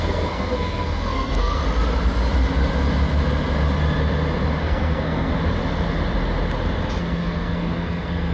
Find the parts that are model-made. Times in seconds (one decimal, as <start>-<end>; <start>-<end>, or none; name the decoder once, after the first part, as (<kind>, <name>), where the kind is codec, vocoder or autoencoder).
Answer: 0.0-1.6 (codec, SNAC); 4.6-5.3; 7.0-8.3